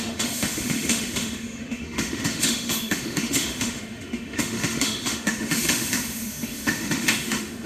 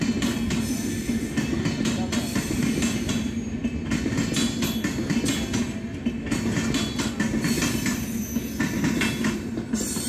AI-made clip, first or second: first